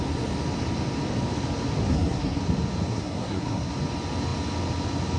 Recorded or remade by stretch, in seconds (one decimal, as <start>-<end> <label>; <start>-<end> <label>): 0.0-1.9 recorded; 1.9-2.4 remade; 2.4-2.9 recorded; 2.9-3.7 remade; 3.7-5.2 recorded